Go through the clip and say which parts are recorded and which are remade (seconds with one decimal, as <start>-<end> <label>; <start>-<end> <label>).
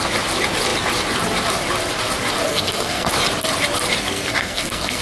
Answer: 0.0-2.5 recorded; 2.5-3.1 remade; 3.1-4.0 recorded; 4.0-5.0 remade